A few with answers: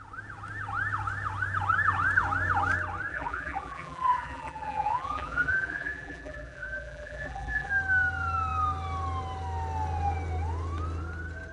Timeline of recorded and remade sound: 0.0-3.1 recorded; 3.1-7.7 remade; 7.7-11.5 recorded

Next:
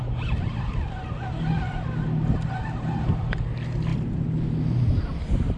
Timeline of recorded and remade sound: 0.0-5.6 recorded